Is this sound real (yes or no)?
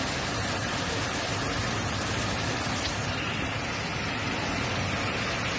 yes